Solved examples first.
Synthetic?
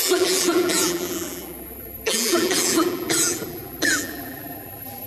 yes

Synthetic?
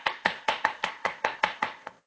yes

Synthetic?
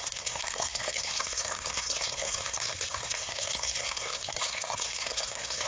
yes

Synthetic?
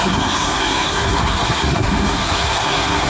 yes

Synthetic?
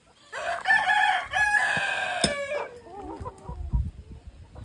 no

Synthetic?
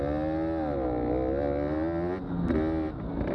no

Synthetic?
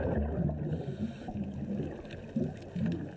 no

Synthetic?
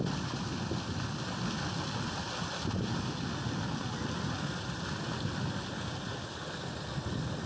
no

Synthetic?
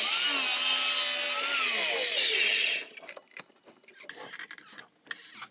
no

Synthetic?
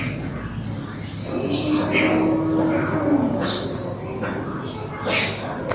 no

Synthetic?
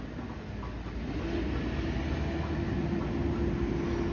no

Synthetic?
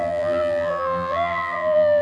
yes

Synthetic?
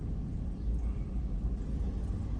no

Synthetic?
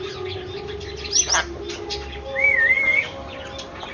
no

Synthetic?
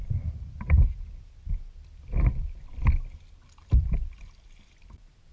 no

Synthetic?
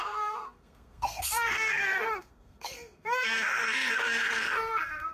yes